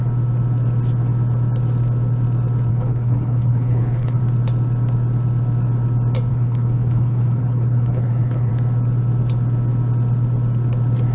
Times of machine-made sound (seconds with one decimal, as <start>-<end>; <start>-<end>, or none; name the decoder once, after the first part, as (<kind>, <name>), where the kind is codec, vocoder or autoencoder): 2.7-4.2 (codec, HILCodec); 6.3-8.5